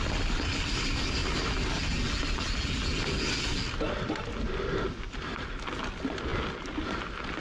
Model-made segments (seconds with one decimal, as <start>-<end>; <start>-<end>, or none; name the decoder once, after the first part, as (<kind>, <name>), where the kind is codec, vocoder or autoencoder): none

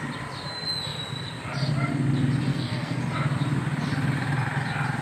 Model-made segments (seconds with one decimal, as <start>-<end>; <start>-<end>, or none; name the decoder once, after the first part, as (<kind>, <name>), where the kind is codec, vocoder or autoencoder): 2.5-3.0 (codec, SNAC)